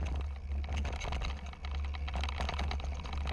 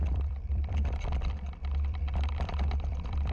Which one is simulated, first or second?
second